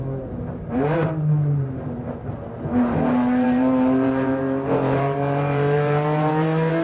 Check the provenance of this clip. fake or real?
fake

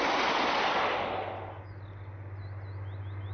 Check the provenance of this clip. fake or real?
real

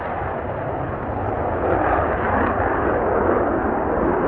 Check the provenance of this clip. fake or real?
real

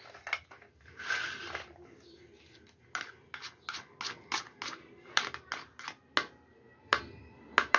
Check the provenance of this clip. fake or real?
real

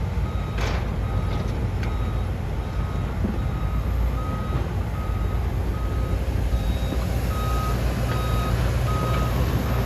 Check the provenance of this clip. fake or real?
real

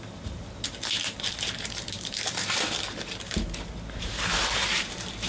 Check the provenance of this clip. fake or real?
fake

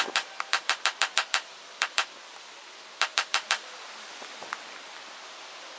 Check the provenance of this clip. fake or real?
fake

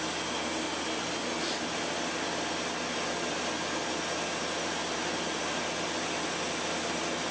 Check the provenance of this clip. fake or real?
real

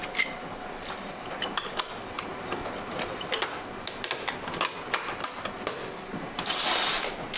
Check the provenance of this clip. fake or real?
real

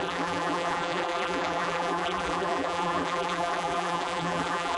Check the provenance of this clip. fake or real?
fake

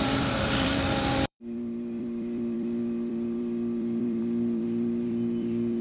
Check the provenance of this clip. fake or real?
fake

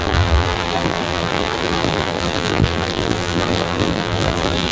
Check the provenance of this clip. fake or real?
fake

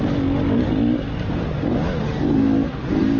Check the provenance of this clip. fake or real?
real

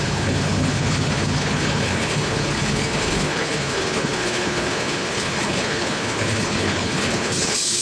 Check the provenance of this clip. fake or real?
fake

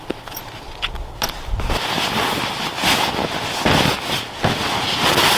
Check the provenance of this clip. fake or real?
real